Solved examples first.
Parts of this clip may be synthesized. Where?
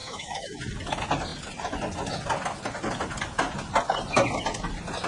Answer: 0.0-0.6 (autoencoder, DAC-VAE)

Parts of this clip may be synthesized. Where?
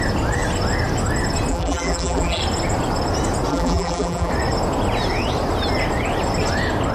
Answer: 1.5-2.4 (vocoder, BigVGAN v2); 3.5-4.3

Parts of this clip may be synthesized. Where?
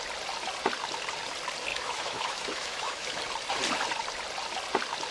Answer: 1.7-3.2 (autoencoder, DAC-VAE)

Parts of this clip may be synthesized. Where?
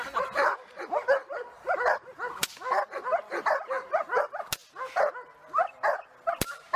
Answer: none